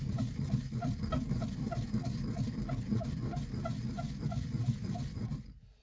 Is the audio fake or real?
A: real